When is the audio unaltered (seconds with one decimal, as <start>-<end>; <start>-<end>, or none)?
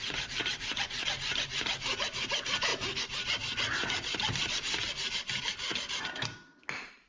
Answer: 0.0-7.1